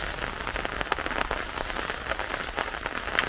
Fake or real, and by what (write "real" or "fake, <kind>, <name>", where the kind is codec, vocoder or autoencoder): real